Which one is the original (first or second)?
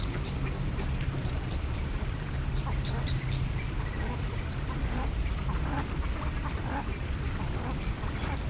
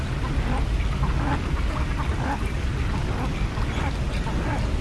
second